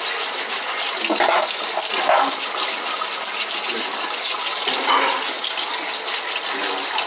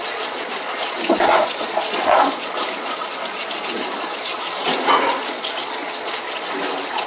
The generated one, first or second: second